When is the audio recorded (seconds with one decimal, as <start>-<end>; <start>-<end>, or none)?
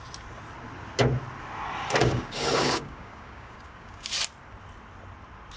0.0-2.0; 4.1-5.6